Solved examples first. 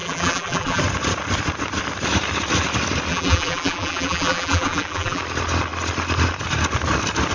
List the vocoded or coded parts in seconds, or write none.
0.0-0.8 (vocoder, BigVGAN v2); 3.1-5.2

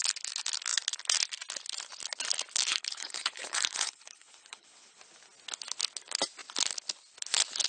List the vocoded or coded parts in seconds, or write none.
2.7-5.0 (codec, HILCodec)